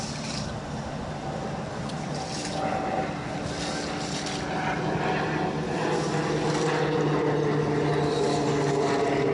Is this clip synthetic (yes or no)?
no